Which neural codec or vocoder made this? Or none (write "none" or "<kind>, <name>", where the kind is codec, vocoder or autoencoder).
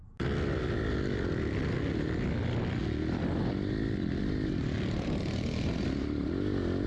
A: none